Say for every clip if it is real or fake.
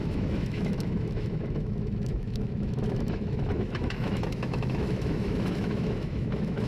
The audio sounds fake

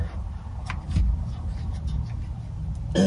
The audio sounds real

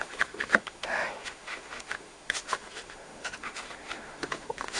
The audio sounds fake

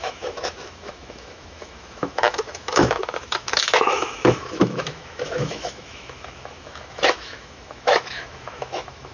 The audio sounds fake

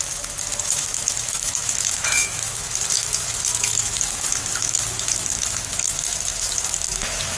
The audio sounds fake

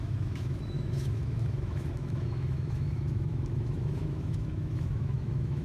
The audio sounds fake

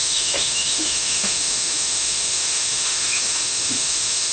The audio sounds fake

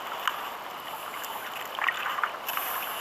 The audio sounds real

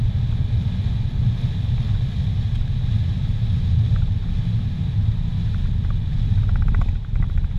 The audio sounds real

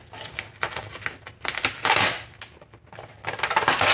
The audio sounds real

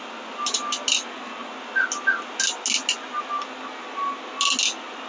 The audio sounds real